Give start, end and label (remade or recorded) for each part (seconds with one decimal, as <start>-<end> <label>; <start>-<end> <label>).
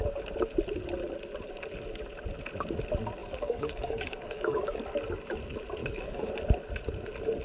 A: 0.0-3.2 recorded; 3.2-4.8 remade; 4.8-5.8 recorded; 5.8-6.3 remade; 6.3-7.4 recorded